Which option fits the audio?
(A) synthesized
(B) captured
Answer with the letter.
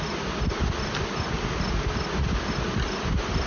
B